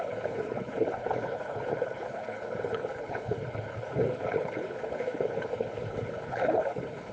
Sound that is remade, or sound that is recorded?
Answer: remade